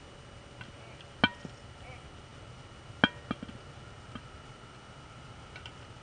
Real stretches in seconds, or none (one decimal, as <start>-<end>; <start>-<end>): 0.0-6.0